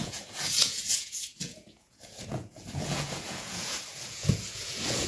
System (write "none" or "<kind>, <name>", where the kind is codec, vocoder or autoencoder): vocoder, Vocos